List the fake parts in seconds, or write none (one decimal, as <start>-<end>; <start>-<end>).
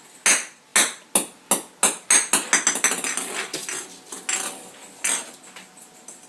none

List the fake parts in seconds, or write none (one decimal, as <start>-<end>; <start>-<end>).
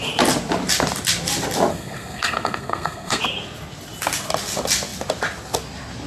1.7-3.2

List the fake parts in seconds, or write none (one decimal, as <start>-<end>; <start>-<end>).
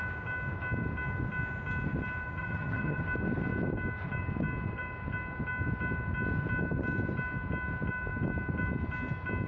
2.4-3.0